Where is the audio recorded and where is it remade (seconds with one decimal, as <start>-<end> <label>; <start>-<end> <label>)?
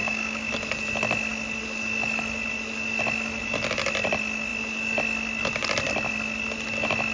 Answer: 0.0-0.5 remade; 0.5-7.1 recorded